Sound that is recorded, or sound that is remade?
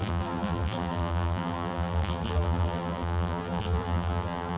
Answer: remade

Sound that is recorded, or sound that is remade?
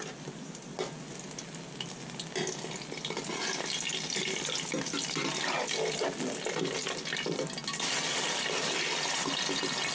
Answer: recorded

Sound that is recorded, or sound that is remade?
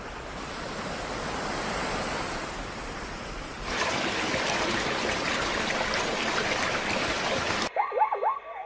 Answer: recorded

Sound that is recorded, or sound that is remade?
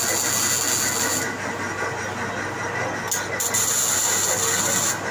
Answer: recorded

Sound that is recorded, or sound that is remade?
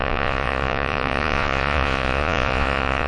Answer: remade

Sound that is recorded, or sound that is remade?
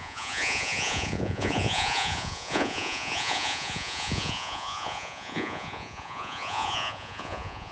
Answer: remade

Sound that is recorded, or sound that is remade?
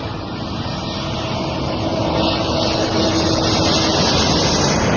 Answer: recorded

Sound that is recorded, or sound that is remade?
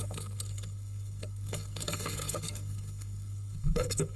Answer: remade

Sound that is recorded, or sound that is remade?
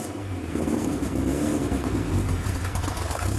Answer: remade